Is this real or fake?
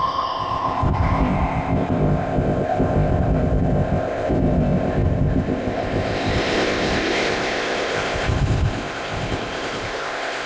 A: fake